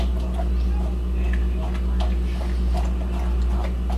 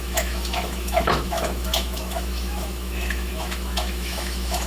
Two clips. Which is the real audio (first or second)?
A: first